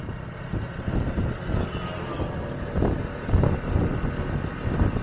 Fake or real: real